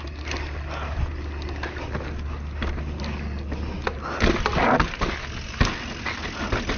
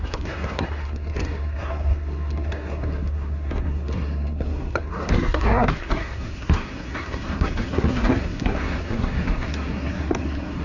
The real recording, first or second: first